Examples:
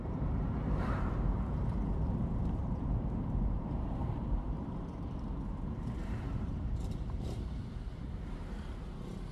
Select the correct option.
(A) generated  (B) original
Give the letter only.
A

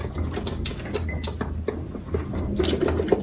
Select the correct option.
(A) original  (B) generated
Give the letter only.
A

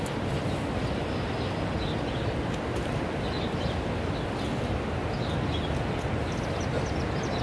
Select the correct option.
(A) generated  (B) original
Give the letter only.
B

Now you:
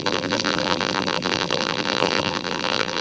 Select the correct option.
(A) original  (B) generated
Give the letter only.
B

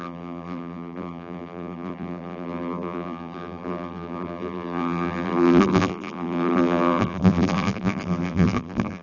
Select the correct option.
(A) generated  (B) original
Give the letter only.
A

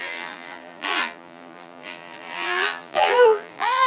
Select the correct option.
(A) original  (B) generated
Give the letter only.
B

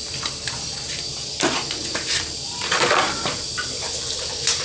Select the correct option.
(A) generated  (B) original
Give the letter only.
A